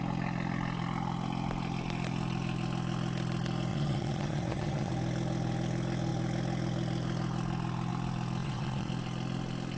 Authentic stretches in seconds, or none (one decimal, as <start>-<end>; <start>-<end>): 0.0-3.7; 4.9-8.4; 8.9-9.8